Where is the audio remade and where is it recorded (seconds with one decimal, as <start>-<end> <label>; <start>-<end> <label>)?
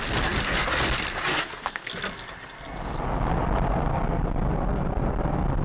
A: 0.0-1.3 recorded; 1.3-1.9 remade; 1.9-5.6 recorded